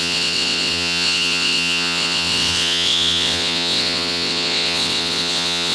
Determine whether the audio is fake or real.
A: fake